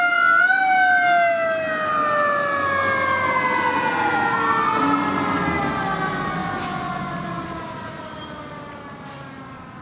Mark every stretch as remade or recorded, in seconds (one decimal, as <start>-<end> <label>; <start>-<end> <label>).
0.0-9.8 recorded